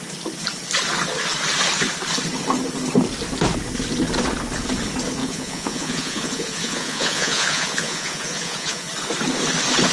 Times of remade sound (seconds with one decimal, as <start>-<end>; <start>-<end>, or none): 5.2-8.9